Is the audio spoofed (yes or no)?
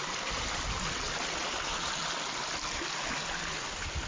no